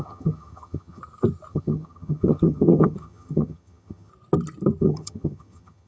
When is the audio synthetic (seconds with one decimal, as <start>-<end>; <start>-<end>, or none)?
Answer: 0.0-1.0; 1.5-4.1; 4.8-5.9